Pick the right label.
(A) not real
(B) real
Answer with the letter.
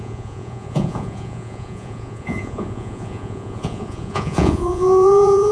A